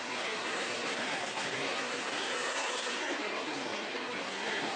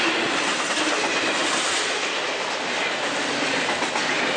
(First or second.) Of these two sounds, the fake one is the first